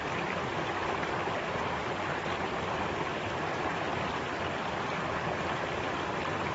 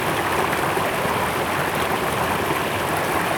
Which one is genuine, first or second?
second